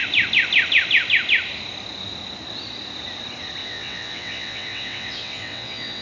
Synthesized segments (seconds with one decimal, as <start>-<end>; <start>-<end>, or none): 3.6-6.0